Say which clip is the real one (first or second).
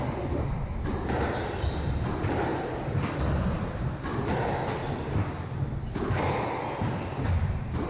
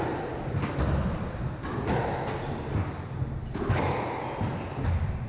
second